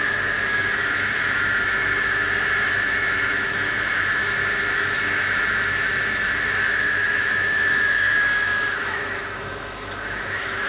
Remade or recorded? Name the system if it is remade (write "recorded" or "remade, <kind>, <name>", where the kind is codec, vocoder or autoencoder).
remade, autoencoder, DAC-VAE